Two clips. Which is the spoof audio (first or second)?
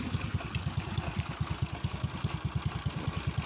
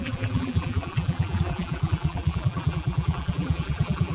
second